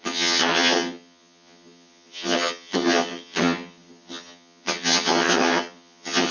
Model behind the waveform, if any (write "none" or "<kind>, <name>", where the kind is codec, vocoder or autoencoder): vocoder, HiFi-GAN